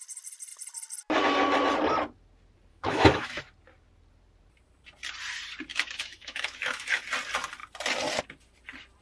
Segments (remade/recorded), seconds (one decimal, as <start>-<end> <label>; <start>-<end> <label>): 0.0-2.7 recorded; 2.7-3.4 remade; 3.4-5.7 recorded; 5.7-7.0 remade; 7.0-9.0 recorded